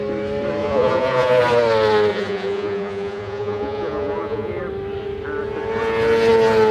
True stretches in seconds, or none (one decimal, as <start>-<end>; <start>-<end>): 0.0-0.6; 1.4-2.1; 4.6-6.7